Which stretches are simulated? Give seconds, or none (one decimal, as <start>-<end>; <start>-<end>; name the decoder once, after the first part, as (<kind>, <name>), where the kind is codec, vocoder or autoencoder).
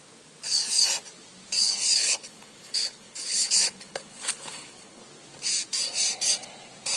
1.6-5.0 (codec, HILCodec)